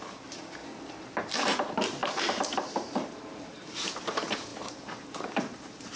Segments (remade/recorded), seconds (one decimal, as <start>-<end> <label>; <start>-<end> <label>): 0.0-0.6 remade; 0.6-1.2 recorded; 1.2-6.0 remade